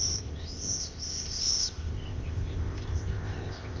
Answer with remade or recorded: remade